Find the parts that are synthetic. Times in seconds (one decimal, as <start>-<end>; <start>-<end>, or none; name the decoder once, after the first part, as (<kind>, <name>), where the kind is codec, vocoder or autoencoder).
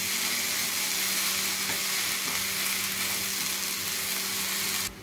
none